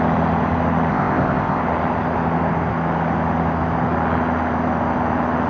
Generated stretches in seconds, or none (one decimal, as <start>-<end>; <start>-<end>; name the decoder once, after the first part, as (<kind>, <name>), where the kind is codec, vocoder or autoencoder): 0.9-1.6 (codec, ZipCodec)